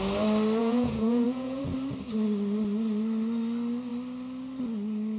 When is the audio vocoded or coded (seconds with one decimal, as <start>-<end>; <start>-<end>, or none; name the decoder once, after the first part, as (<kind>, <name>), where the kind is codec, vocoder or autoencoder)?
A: 0.6-1.6 (vocoder, Vocos)